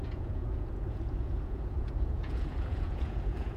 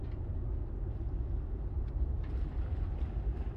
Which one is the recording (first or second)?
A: second